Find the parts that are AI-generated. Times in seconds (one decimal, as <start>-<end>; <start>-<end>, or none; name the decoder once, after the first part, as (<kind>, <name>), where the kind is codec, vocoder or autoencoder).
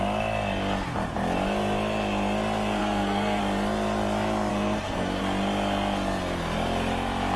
2.8-3.4 (codec, SNAC); 4.5-5.2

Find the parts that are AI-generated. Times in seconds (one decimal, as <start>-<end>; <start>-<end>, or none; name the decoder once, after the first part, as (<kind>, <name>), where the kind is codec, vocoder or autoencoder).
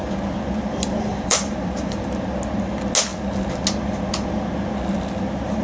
1.1-2.1 (vocoder, BigVGAN v2)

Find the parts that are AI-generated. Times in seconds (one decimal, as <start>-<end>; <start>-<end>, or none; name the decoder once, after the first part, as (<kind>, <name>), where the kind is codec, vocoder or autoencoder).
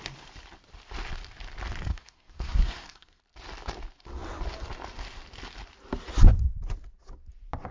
1.9-3.2 (codec, SNAC)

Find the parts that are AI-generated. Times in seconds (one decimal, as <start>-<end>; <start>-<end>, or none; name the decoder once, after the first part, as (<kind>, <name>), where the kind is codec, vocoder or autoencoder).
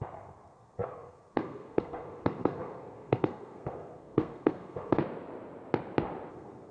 0.0-5.0 (codec, SNAC); 6.3-6.7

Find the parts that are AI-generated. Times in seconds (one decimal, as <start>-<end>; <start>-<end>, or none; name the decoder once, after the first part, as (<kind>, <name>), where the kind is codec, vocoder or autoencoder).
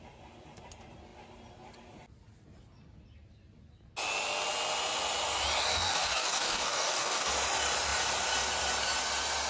5.7-7.3 (codec, DAC)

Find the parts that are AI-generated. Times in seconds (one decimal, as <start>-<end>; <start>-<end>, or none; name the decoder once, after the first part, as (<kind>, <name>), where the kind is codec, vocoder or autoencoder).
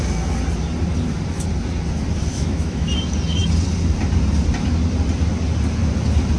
2.3-2.9 (autoencoder, DAC-VAE)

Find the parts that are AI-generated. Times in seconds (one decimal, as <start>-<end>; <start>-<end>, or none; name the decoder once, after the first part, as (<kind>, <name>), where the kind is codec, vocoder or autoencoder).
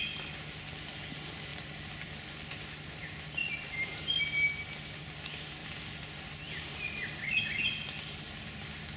3.4-4.2 (vocoder, BigVGAN v2); 5.6-7.4